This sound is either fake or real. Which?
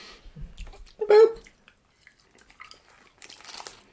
real